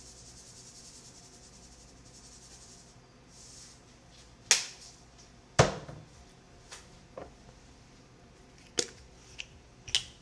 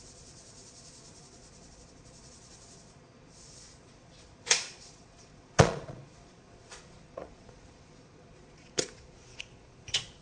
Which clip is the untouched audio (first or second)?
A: first